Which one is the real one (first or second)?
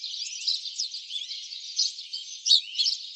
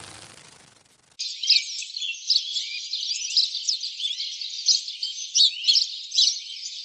second